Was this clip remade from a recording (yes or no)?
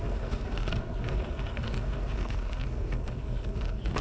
yes